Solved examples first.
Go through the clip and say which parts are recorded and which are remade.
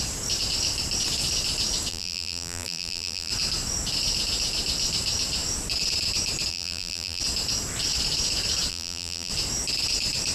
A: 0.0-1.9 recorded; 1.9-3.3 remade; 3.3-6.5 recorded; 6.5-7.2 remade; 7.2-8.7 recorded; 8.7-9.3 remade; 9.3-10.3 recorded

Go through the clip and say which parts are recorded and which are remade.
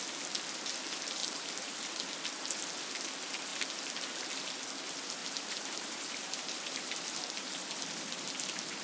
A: 0.0-1.2 recorded; 1.2-2.1 remade; 2.1-5.2 recorded; 5.2-7.5 remade; 7.5-8.8 recorded